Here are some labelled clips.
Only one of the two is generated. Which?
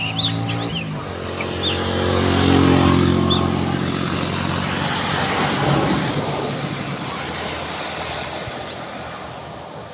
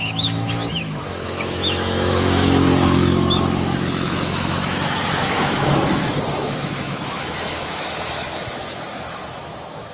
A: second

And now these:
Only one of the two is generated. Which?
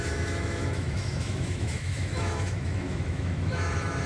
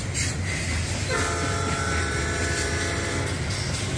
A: first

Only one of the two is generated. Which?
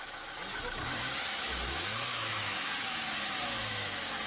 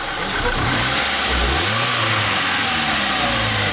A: first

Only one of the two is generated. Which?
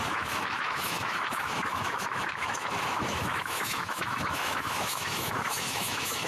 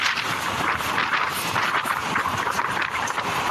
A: first